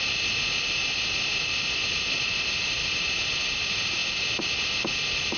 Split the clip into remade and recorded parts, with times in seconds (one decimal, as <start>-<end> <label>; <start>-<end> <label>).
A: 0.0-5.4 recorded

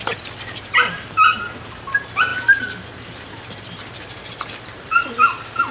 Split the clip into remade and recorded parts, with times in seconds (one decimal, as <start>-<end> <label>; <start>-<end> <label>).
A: 0.0-5.7 recorded

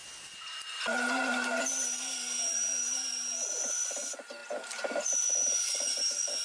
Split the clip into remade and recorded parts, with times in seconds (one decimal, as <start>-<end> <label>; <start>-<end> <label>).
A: 0.0-4.4 recorded; 4.4-6.0 remade; 6.0-6.4 recorded

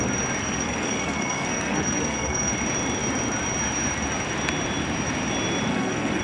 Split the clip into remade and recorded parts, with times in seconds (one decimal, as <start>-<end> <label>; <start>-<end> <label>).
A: 0.0-0.4 recorded; 0.4-2.5 remade; 2.5-5.7 recorded; 5.7-6.2 remade